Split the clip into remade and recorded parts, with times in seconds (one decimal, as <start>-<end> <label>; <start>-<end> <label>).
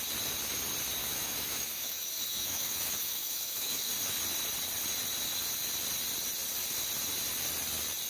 0.0-1.0 recorded; 1.0-3.9 remade; 3.9-8.1 recorded